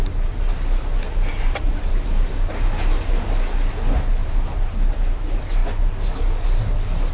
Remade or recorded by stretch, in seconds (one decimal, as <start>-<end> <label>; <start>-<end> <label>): 0.0-1.3 recorded; 1.3-2.3 remade; 2.3-4.2 recorded; 4.2-4.9 remade; 4.9-7.1 recorded